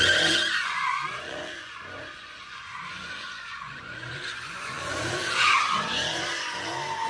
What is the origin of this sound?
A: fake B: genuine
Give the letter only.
A